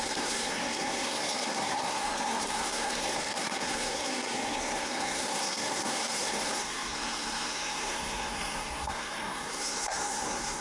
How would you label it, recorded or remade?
remade